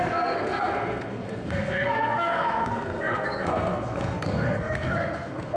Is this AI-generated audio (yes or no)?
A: yes